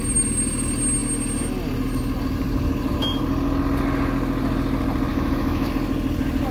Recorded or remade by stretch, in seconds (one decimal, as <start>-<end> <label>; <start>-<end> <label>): 0.0-5.1 recorded; 5.1-5.7 remade; 5.7-6.5 recorded

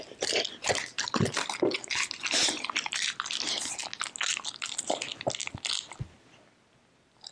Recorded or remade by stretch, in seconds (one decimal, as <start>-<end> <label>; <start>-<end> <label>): 0.0-7.3 recorded

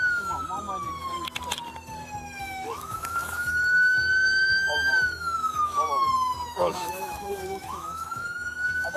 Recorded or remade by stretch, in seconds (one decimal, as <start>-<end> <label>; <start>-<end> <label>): 0.0-0.4 remade; 0.4-2.4 recorded; 2.4-9.0 remade

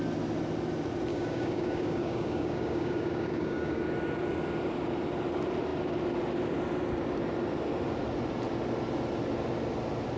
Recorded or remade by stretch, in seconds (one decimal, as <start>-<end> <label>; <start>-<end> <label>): 0.0-1.1 recorded; 1.1-3.8 remade; 3.8-10.2 recorded

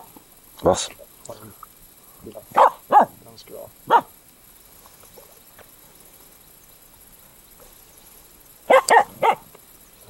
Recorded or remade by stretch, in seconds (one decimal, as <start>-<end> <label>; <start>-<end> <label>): 0.0-7.3 recorded; 7.3-9.2 remade; 9.2-10.1 recorded